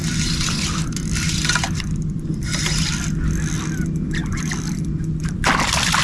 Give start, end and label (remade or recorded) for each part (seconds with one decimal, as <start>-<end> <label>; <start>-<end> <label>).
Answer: 0.0-6.0 recorded